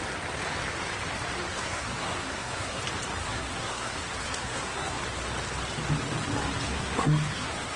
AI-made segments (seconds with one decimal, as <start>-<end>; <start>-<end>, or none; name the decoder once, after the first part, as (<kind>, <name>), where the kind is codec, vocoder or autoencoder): 1.5-2.8 (codec, SNAC); 3.2-5.0; 6.7-7.8